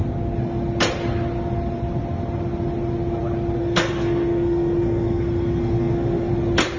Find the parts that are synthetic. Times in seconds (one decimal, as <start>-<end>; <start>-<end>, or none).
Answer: 3.6-6.3